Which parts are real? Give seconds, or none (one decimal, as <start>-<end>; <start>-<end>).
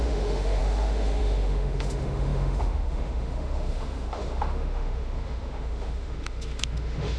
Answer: none